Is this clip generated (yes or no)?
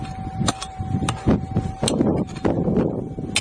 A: no